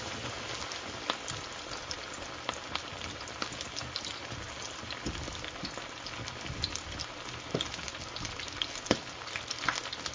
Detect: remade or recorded recorded